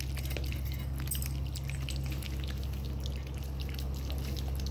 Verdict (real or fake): real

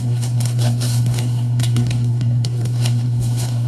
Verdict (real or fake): fake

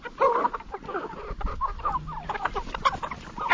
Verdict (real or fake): real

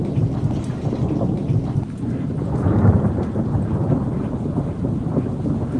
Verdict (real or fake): real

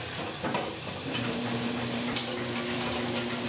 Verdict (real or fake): real